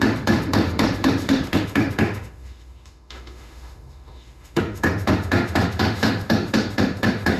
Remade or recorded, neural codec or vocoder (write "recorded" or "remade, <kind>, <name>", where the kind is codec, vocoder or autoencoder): remade, autoencoder, DAC-VAE